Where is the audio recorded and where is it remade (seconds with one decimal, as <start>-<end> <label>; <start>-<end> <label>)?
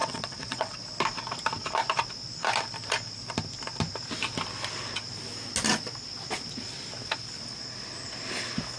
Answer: 0.0-0.8 remade; 0.8-8.8 recorded